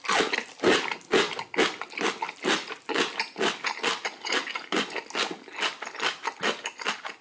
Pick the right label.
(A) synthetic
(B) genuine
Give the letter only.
B